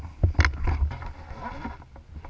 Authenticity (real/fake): real